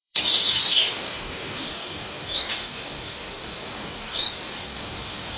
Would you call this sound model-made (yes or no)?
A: yes